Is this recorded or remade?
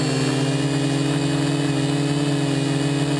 recorded